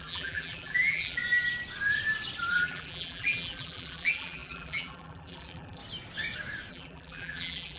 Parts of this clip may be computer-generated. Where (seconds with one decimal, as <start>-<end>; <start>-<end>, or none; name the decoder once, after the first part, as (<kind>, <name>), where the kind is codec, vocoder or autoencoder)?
0.0-1.2 (vocoder, BigVGAN v2); 2.5-5.8; 6.7-7.8